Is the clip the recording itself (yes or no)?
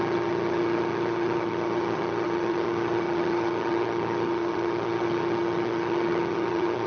no